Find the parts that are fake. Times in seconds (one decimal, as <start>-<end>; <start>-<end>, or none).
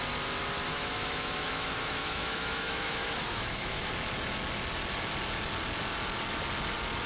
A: 0.7-3.9